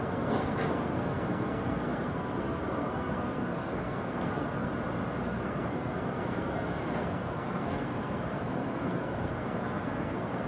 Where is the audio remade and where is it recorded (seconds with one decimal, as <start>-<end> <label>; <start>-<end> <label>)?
0.0-4.7 remade; 4.7-5.2 recorded; 5.2-10.5 remade